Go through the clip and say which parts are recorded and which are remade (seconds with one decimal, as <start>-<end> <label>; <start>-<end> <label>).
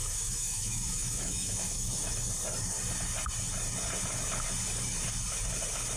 0.0-2.3 remade; 2.3-6.0 recorded